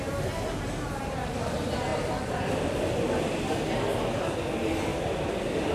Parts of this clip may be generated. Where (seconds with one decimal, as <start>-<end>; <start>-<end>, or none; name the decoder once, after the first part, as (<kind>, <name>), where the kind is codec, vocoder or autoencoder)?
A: 1.9-3.7 (vocoder, BigVGAN v2); 4.9-5.7